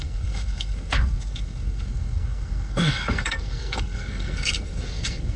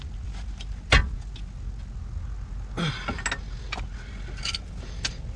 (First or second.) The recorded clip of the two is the second